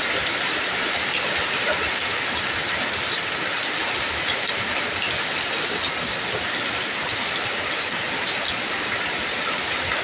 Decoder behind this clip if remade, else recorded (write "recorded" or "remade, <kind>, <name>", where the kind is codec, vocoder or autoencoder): recorded